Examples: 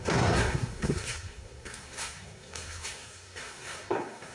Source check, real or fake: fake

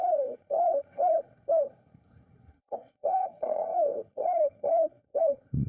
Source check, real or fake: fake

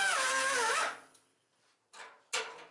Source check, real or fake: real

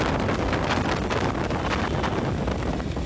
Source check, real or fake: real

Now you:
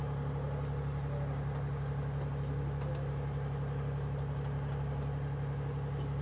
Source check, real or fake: real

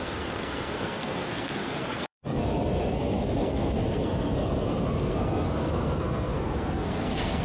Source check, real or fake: fake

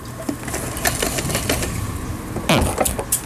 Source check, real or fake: real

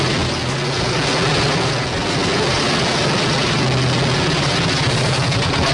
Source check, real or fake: real